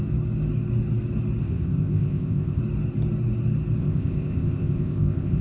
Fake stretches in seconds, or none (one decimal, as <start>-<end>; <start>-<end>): 1.4-2.6; 3.8-5.4